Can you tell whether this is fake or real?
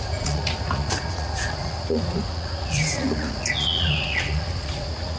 fake